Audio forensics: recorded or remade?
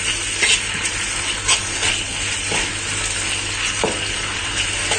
recorded